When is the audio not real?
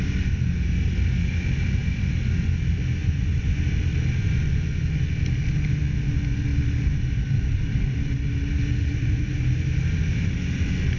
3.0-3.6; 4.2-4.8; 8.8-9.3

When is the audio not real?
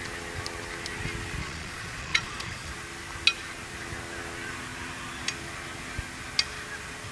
1.4-2.7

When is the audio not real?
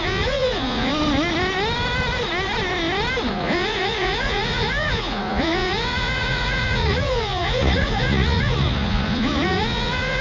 0.0-0.9; 3.3-10.2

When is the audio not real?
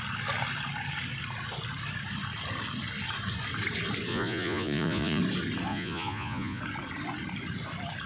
4.1-5.2; 5.7-6.6